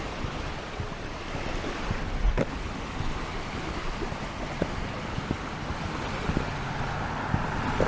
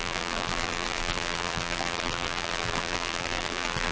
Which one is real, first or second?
first